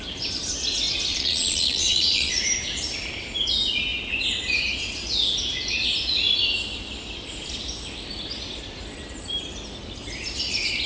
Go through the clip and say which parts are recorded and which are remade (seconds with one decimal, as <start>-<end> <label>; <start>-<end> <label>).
0.0-1.1 recorded; 1.1-2.3 remade; 2.3-10.9 recorded